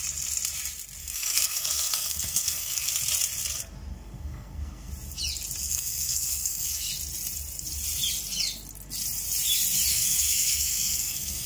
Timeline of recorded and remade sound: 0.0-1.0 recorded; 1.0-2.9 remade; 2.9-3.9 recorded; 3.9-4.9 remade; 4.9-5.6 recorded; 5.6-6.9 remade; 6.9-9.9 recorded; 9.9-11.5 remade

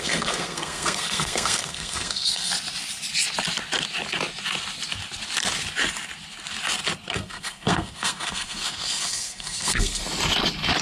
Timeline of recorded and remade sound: 0.0-2.5 remade; 2.5-7.1 recorded; 7.1-10.0 remade; 10.0-10.8 recorded

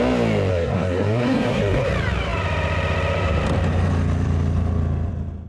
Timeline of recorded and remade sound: 0.0-0.5 recorded; 0.5-1.9 remade; 1.9-5.5 recorded

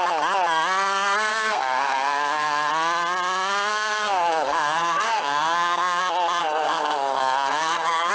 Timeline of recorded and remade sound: 0.0-1.3 recorded; 1.3-2.7 remade; 2.7-3.7 recorded; 3.7-6.0 remade; 6.0-6.4 recorded; 6.4-8.1 remade

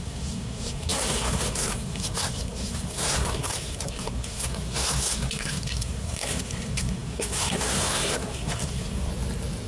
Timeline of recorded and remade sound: 0.0-9.1 remade; 9.1-9.7 recorded

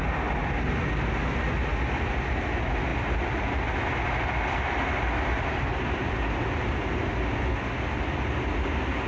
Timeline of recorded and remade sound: 0.0-9.1 recorded

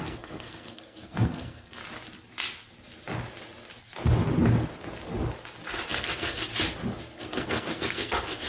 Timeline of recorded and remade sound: 0.0-1.8 remade; 1.8-5.9 recorded; 5.9-6.5 remade; 6.5-7.2 recorded; 7.2-8.5 remade

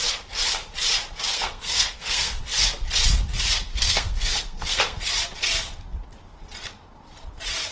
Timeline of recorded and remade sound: 0.0-1.3 recorded; 1.3-2.4 remade; 2.4-3.7 recorded; 3.7-5.0 remade; 5.0-7.7 recorded